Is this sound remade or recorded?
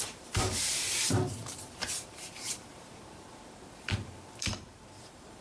remade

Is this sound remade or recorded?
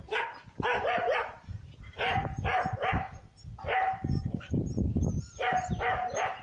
remade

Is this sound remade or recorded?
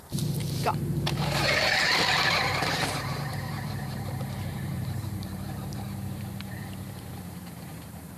remade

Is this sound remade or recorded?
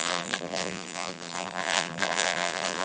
remade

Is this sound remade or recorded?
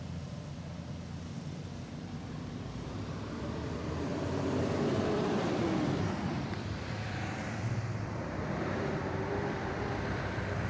remade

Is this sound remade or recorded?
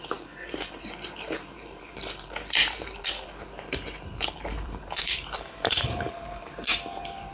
remade